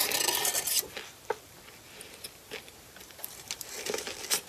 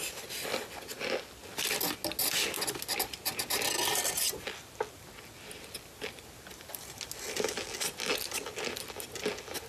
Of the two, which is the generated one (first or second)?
first